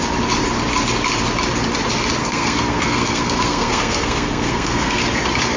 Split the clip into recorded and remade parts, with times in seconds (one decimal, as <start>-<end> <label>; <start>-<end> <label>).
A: 0.0-2.2 recorded; 2.2-5.0 remade; 5.0-5.6 recorded